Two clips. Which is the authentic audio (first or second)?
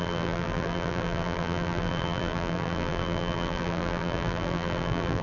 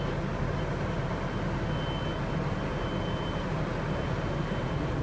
second